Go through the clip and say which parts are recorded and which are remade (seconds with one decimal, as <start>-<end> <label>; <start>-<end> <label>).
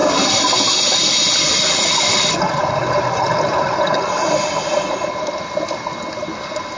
0.0-2.0 recorded; 2.0-2.8 remade; 2.8-3.6 recorded; 3.6-6.8 remade